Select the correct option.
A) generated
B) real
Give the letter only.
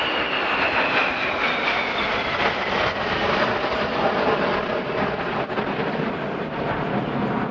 B